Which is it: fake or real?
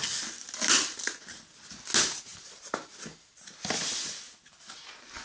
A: real